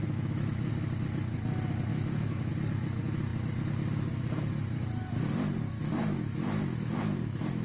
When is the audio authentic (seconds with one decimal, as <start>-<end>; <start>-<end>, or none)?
0.7-1.9; 2.5-5.8; 6.4-7.6